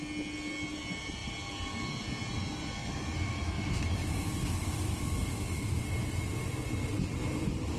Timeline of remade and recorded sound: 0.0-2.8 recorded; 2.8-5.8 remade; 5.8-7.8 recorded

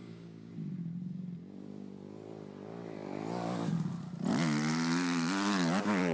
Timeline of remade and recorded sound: 0.0-0.5 remade; 0.5-6.1 recorded

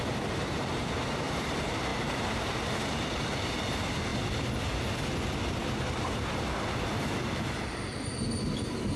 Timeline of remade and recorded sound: 0.0-4.1 remade; 4.1-6.0 recorded; 6.0-7.9 remade; 7.9-8.5 recorded; 8.5-9.0 remade

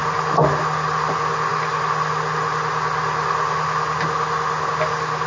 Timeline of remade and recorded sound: 0.0-5.3 recorded

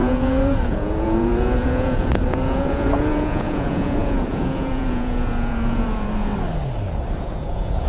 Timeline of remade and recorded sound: 0.0-6.3 remade; 6.3-7.2 recorded; 7.2-7.9 remade

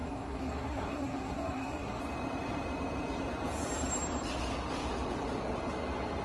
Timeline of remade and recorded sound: 0.0-2.0 remade; 2.0-6.2 recorded